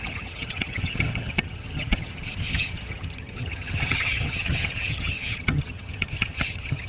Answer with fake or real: fake